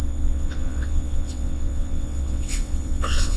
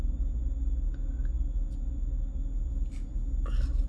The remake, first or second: first